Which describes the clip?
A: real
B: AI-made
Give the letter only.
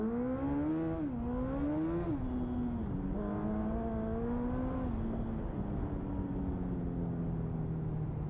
A